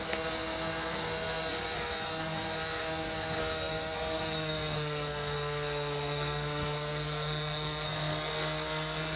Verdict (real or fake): fake